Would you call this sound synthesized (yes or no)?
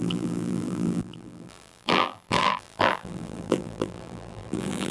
yes